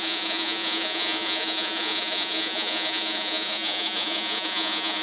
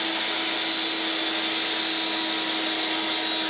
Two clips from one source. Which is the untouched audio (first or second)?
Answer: second